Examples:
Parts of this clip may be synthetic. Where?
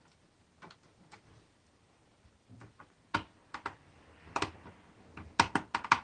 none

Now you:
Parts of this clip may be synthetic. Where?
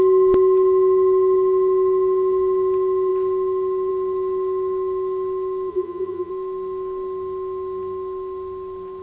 5.7-6.3 (vocoder, Vocos)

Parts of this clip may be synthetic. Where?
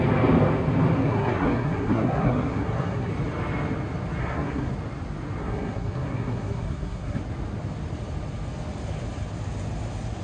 1.0-3.1 (codec, SNAC); 4.2-4.7; 5.4-7.2